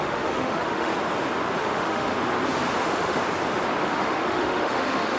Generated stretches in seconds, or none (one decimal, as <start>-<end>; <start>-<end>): 0.0-0.9; 1.6-2.1; 2.8-3.2; 3.8-5.2